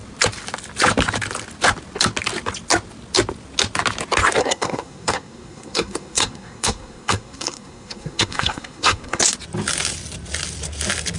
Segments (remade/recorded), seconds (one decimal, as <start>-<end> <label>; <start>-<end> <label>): 0.0-4.4 recorded; 4.4-9.2 remade; 9.2-11.2 recorded